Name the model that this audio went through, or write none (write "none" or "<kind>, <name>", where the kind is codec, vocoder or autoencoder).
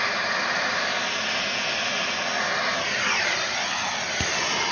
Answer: none